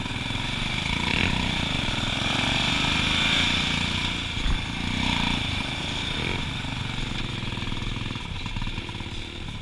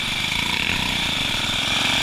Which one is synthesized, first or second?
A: second